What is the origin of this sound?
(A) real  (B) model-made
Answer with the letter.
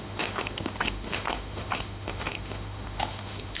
B